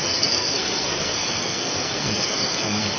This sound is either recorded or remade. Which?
remade